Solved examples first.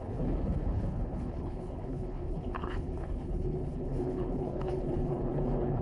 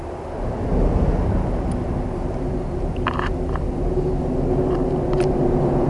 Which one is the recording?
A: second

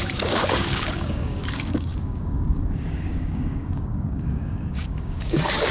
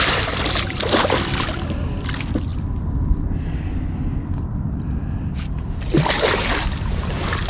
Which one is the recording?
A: second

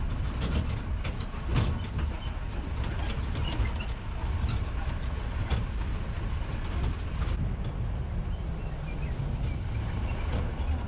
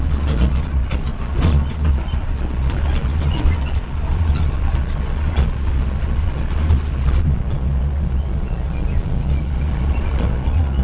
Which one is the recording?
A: first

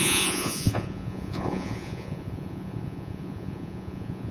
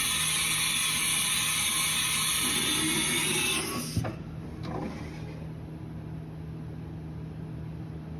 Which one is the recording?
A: second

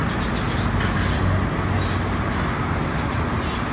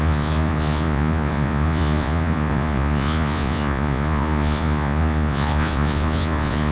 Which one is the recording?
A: first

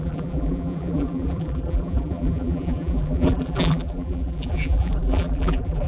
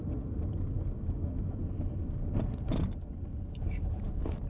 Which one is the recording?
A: second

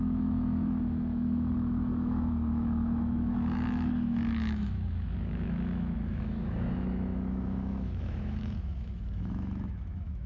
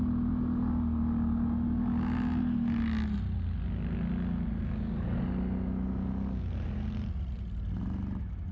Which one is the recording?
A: second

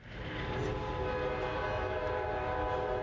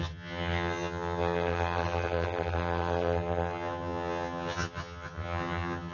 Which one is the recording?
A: first